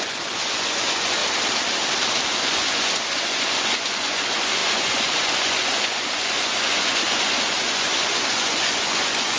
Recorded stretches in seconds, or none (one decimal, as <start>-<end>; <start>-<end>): 1.2-2.4